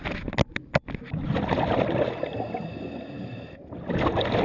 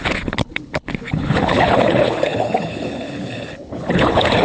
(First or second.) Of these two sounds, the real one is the first